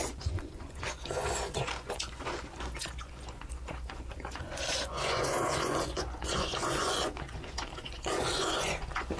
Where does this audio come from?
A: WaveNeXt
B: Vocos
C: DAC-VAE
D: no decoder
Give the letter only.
B